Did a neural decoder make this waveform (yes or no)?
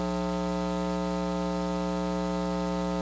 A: no